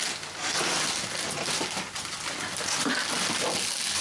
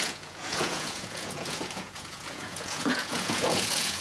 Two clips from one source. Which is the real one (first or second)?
first